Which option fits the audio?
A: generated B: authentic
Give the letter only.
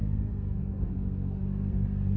A